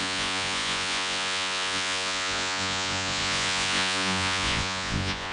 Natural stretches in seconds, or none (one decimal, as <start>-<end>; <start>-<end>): none